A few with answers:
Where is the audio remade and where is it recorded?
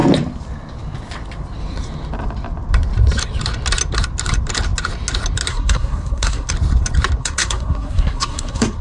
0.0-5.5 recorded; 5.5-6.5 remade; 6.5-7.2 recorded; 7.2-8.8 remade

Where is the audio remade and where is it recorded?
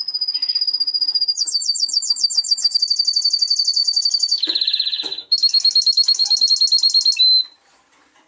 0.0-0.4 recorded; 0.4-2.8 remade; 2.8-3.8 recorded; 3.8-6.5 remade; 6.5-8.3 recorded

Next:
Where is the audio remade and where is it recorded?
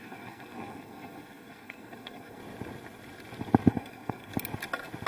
0.0-2.4 remade; 2.4-3.7 recorded; 3.7-4.3 remade; 4.3-5.1 recorded